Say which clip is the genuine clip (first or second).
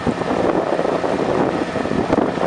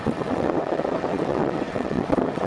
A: first